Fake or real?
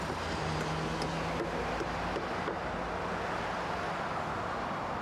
real